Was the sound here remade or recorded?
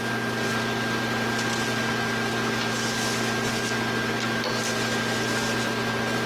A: recorded